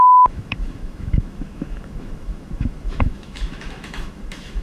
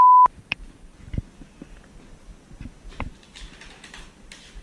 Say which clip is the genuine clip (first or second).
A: second